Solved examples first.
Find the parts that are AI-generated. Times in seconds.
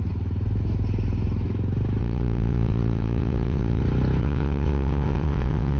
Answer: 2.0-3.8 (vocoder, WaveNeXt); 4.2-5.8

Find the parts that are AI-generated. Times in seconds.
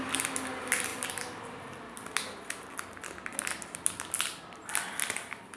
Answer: none